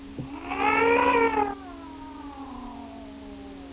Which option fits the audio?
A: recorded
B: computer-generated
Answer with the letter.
A